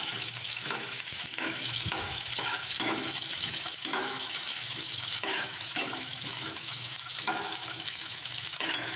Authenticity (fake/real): fake